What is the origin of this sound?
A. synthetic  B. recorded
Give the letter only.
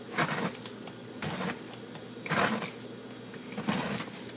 B